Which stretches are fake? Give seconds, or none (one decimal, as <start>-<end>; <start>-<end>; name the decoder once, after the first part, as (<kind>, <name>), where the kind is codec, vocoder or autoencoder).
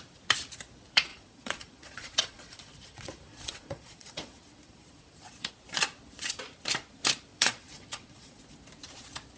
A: 1.1-5.5 (vocoder, Vocos); 7.3-8.4